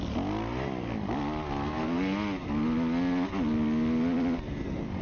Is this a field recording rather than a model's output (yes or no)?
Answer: yes